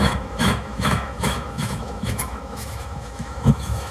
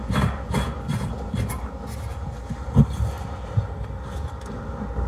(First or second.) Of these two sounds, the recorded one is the second